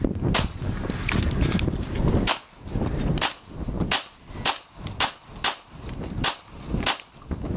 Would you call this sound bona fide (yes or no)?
yes